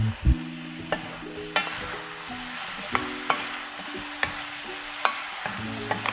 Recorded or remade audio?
recorded